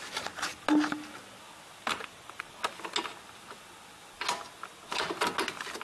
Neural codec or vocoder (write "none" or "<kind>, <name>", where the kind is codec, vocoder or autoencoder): none